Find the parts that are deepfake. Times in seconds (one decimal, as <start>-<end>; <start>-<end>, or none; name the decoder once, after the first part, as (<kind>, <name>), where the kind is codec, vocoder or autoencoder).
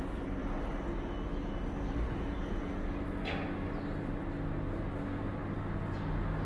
none